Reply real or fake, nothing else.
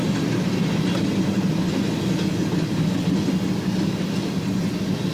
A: real